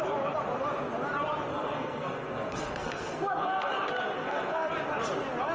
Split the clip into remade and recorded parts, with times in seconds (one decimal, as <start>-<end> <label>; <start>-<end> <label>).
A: 0.0-1.5 recorded; 1.5-3.7 remade; 3.7-4.2 recorded; 4.2-4.7 remade; 4.7-5.5 recorded